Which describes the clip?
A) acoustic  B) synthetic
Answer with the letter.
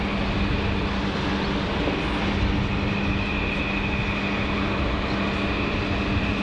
A